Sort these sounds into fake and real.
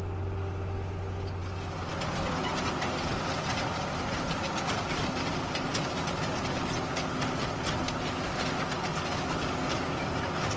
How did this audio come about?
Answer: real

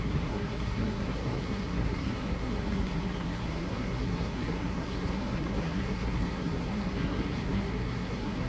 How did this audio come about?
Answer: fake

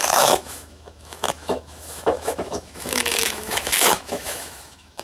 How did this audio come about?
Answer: fake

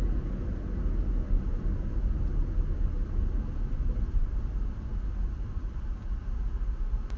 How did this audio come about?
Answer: real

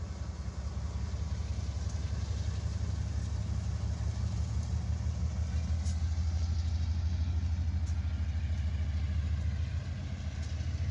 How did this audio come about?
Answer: real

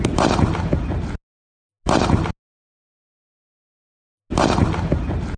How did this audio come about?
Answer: real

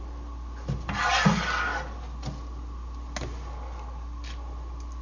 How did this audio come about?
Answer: real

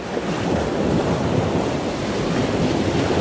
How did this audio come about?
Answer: real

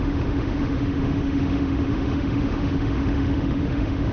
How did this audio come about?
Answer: fake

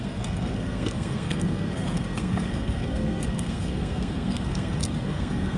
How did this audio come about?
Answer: fake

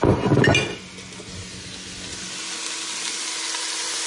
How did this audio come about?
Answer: real